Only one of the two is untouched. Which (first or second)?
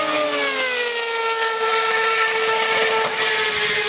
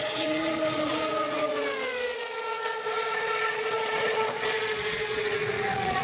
first